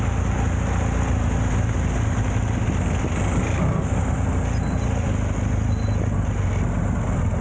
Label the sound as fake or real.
real